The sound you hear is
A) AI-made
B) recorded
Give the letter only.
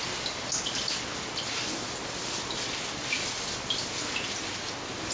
B